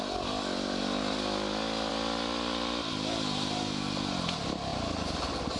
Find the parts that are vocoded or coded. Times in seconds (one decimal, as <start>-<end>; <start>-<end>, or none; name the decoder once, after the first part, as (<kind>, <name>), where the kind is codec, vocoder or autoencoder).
none

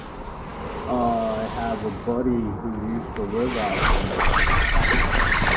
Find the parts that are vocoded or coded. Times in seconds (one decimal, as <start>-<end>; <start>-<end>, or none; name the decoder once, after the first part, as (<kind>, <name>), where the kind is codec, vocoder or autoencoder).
3.7-4.4 (codec, HILCodec)